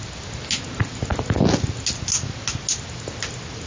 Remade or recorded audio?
recorded